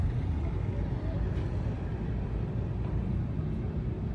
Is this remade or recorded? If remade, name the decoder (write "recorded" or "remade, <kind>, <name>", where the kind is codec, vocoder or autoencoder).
recorded